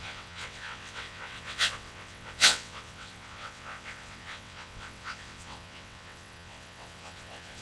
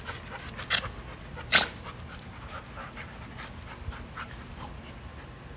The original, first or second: second